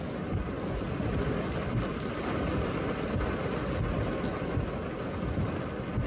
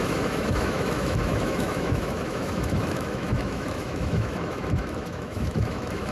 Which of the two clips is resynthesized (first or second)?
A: second